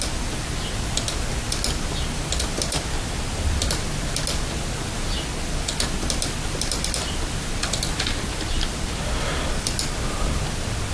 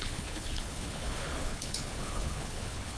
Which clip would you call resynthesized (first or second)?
second